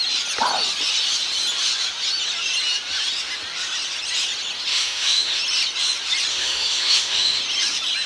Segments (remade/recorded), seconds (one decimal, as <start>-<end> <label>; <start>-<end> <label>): 0.0-4.7 recorded; 4.7-5.4 remade; 5.4-6.3 recorded; 6.3-7.4 remade; 7.4-8.1 recorded